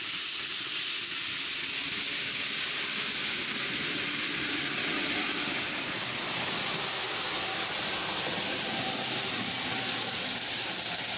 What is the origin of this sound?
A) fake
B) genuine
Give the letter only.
B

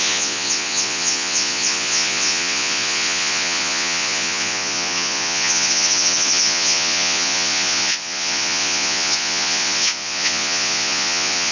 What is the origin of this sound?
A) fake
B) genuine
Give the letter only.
A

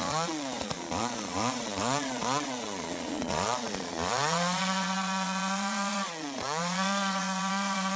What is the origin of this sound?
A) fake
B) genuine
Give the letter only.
A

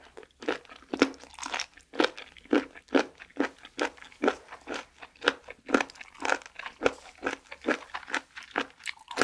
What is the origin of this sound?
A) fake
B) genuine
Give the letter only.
B